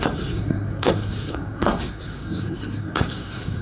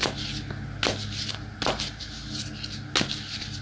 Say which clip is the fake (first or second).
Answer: first